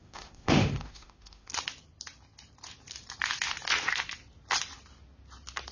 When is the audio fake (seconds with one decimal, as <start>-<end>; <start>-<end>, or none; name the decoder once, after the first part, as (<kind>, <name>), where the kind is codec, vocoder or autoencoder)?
0.0-1.5 (autoencoder, DAC-VAE)